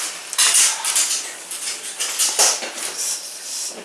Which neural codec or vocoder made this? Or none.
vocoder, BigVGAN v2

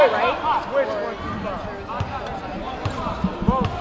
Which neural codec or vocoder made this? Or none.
none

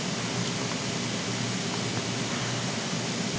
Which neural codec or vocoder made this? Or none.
none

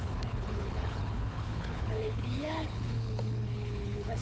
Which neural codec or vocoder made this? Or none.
codec, HILCodec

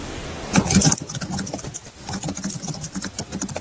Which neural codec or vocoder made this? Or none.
none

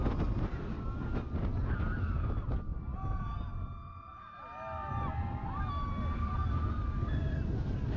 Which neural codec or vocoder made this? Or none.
none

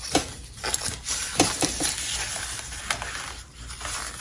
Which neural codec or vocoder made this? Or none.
none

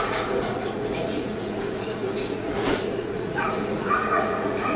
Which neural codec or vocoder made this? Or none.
vocoder, Vocos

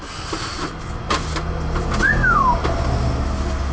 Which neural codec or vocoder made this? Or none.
none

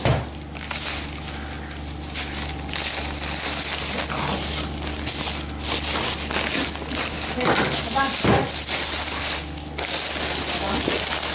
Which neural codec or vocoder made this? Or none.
none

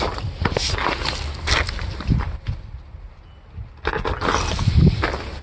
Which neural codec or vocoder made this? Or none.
none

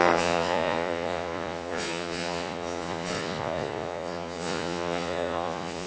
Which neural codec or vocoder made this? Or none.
vocoder, Vocos